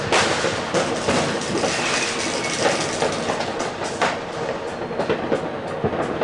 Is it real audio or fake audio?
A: real